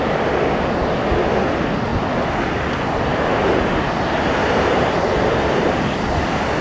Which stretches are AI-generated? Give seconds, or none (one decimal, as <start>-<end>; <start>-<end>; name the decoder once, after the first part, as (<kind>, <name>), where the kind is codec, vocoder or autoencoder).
3.1-3.6 (vocoder, BigVGAN v2); 4.4-5.0